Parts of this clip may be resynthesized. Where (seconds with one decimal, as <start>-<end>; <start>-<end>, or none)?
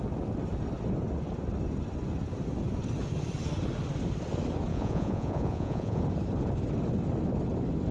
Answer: 4.7-6.0